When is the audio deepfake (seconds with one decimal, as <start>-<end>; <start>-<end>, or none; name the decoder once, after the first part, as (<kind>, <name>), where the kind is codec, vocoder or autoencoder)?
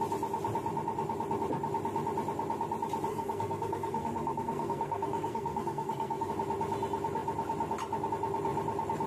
3.1-6.3 (codec, SNAC)